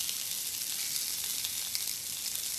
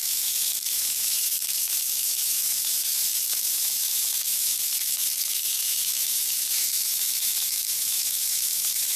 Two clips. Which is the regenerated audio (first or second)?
second